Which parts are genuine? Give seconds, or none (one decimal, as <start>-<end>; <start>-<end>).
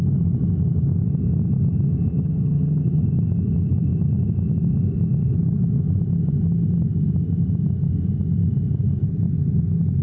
0.0-2.1; 3.0-10.0